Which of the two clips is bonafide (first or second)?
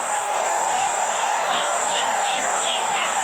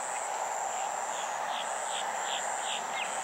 second